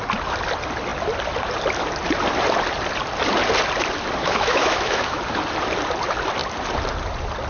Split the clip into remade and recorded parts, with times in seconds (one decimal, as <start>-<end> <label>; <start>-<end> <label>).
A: 0.0-4.2 recorded; 4.2-5.2 remade; 5.2-7.5 recorded